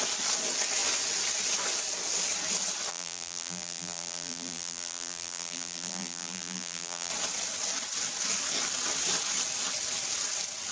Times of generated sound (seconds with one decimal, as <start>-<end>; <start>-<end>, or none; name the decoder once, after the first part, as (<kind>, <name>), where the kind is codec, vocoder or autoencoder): 2.9-7.1 (vocoder, BigVGAN v2)